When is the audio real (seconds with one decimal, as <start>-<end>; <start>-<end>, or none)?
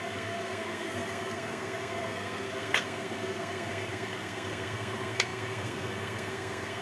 none